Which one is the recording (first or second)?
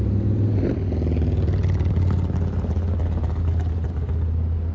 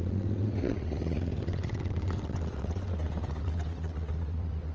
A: first